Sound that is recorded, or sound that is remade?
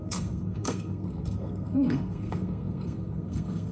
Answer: remade